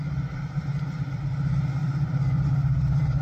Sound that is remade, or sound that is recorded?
remade